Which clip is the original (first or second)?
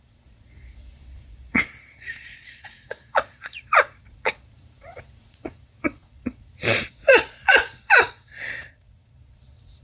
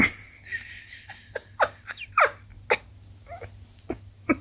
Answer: second